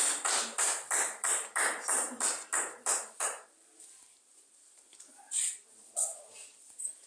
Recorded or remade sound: recorded